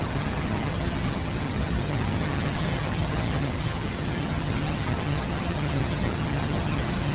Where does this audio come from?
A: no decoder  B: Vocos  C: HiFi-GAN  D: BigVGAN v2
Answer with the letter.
C